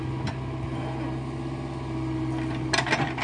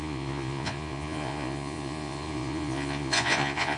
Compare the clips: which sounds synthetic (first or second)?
second